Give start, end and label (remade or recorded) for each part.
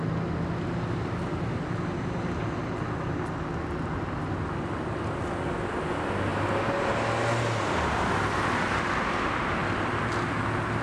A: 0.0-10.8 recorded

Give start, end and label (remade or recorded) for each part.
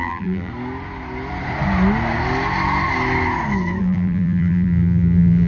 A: 0.0-0.5 remade; 0.5-3.8 recorded; 3.8-5.5 remade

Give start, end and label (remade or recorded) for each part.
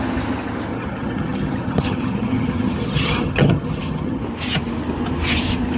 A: 0.0-0.7 recorded; 0.7-4.2 remade; 4.2-5.8 recorded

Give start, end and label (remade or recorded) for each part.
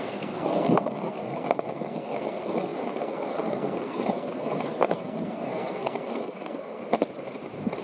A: 0.0-6.8 remade; 6.8-7.8 recorded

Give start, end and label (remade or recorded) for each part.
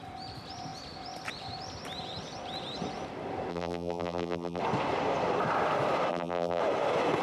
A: 0.0-3.5 recorded; 3.5-4.6 remade; 4.6-6.1 recorded; 6.1-6.6 remade; 6.6-7.2 recorded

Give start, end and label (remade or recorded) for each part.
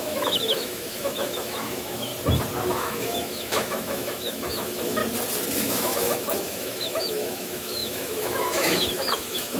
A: 0.0-2.1 remade; 2.1-2.7 recorded; 2.7-5.0 remade; 5.0-5.6 recorded; 5.6-9.6 remade